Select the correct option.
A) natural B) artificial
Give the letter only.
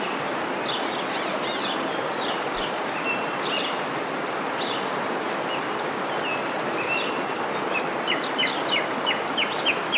A